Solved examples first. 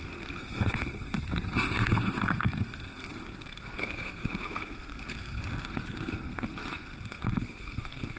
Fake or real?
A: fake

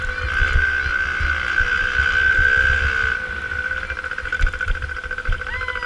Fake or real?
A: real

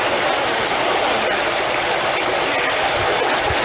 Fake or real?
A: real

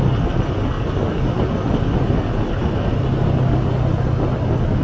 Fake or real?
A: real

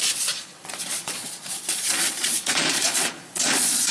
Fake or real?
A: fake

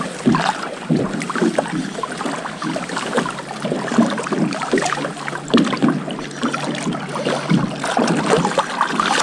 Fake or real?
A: real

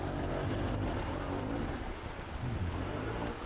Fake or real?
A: real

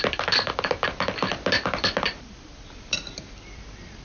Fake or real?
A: fake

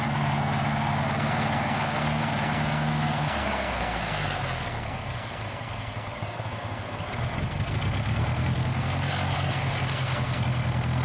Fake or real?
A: fake